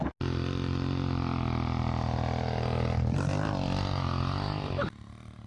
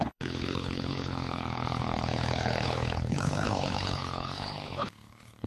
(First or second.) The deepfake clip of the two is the second